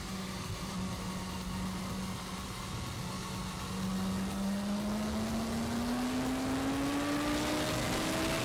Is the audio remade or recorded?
recorded